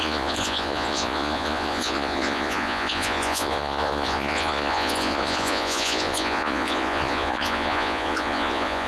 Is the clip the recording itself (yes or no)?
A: no